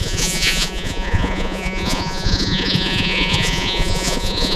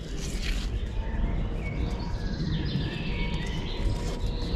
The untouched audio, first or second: second